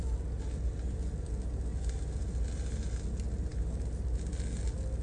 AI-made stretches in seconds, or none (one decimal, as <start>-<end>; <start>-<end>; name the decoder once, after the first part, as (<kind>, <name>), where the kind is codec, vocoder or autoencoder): none